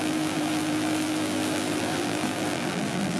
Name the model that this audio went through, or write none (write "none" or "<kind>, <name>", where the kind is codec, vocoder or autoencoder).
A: vocoder, BigVGAN v2